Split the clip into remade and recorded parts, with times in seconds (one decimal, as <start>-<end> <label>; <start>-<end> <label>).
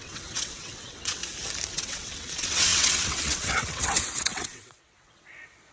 0.0-1.2 remade; 1.2-1.7 recorded; 1.7-5.7 remade